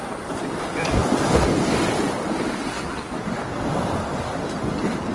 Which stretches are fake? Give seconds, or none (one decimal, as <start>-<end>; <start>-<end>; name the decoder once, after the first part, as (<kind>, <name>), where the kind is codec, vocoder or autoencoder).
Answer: none